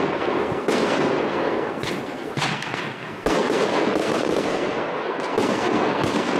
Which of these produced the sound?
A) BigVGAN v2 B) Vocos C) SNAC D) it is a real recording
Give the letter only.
C